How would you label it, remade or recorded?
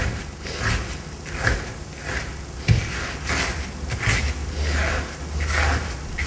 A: recorded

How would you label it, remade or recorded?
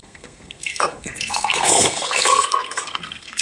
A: remade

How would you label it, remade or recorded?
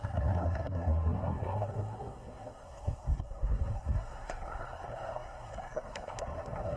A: remade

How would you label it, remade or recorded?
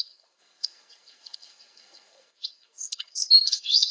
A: remade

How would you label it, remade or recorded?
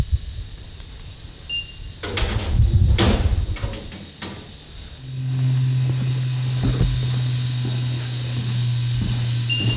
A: recorded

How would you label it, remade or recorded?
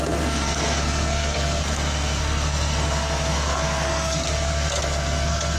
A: remade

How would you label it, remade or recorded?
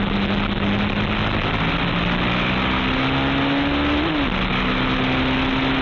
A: recorded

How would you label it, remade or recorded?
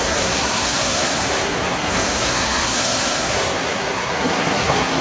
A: remade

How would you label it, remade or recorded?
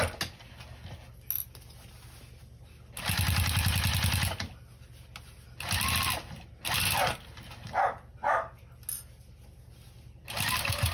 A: recorded